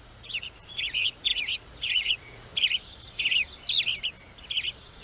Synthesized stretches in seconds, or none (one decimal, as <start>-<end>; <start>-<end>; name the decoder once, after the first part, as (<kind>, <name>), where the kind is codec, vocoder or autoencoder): 0.0-2.5 (vocoder, Vocos)